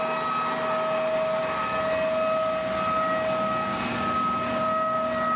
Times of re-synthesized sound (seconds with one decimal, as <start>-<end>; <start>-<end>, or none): none